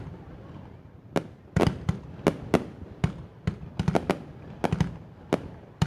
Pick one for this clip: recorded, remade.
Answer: recorded